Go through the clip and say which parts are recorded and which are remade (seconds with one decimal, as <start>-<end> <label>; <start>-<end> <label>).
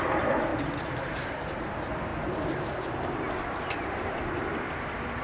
0.0-5.2 recorded